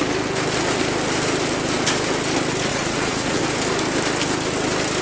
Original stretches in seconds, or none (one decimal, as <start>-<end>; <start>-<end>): 0.0-2.7; 3.4-5.0